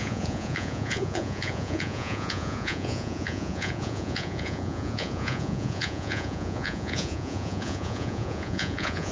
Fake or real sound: fake